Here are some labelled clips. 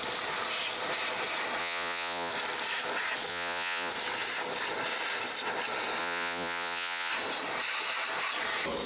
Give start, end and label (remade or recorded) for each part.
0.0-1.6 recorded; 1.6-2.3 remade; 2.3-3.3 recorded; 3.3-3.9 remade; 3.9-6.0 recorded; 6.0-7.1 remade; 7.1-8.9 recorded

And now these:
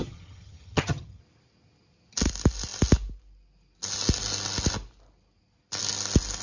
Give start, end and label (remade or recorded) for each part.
0.0-1.2 remade; 1.2-6.4 recorded

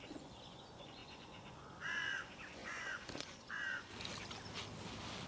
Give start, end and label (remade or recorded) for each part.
0.0-3.9 remade; 3.9-5.3 recorded

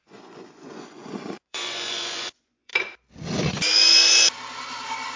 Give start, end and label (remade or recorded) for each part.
0.0-2.7 remade; 2.7-5.2 recorded

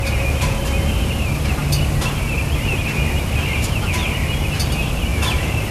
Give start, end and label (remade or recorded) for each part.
0.0-5.7 recorded